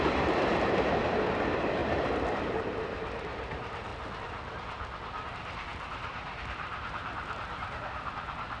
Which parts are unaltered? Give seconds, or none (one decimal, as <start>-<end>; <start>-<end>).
1.8-2.4; 3.9-5.3